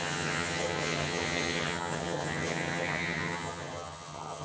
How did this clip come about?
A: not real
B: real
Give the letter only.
A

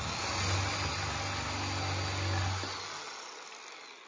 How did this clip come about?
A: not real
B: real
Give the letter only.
B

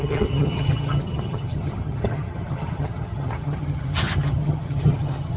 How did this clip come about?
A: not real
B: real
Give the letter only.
A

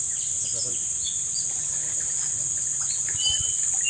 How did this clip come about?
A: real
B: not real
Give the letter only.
A